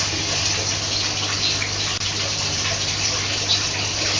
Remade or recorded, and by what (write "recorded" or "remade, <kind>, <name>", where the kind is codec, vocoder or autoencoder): recorded